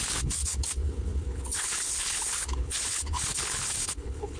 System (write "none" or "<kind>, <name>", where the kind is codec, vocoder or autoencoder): codec, HILCodec